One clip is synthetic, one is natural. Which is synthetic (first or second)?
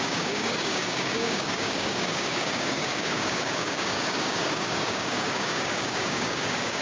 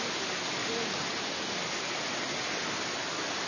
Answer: first